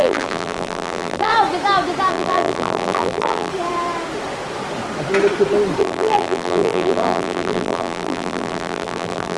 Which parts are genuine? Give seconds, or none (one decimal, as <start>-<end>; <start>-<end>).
1.3-2.1; 3.5-5.8